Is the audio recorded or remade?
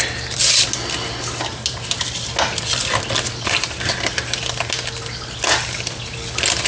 recorded